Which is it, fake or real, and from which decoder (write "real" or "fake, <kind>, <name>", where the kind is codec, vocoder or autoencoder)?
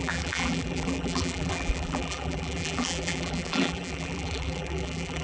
fake, vocoder, BigVGAN v2